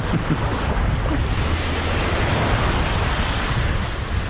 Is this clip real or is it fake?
real